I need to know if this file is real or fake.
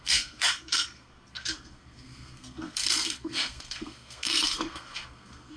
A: fake